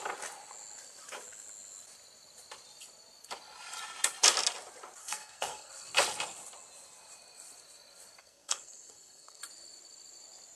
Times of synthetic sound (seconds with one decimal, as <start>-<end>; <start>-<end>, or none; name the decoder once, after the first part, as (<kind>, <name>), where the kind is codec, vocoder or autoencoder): 5.0-5.7 (codec, SNAC); 8.2-9.4